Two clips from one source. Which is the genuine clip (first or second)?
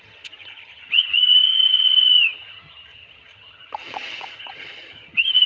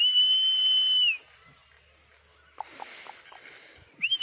second